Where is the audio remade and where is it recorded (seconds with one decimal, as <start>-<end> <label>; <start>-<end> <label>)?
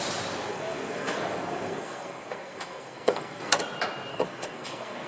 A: 0.0-0.5 recorded; 0.5-3.6 remade; 3.6-4.1 recorded; 4.1-5.1 remade